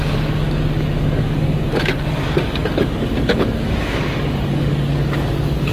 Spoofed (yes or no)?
yes